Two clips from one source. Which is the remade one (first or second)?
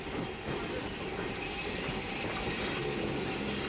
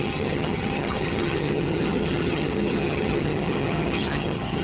second